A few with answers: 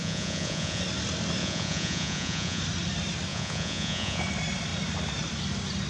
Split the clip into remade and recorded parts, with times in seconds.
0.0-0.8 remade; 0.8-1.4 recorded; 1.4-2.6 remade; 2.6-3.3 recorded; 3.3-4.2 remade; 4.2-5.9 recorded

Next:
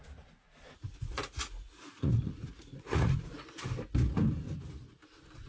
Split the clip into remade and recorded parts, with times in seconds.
0.0-1.0 recorded; 1.0-3.3 remade; 3.3-5.5 recorded

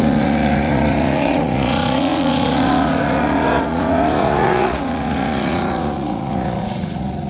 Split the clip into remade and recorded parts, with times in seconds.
0.0-7.3 remade